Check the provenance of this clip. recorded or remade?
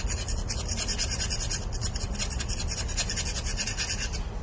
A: recorded